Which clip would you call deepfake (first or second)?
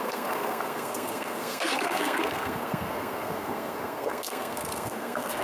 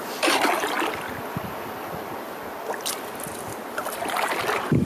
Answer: first